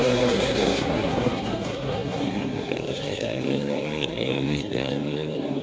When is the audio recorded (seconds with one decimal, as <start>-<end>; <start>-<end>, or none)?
none